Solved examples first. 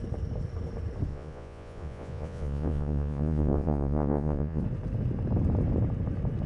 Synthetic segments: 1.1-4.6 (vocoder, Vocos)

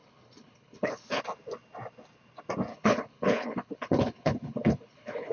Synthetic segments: 0.0-1.2 (codec, HILCodec); 2.7-5.3